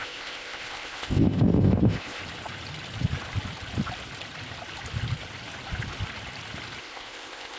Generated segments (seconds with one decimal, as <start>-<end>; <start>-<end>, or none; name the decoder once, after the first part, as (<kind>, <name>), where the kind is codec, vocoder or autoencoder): 0.0-2.2 (codec, ZipCodec); 6.8-7.6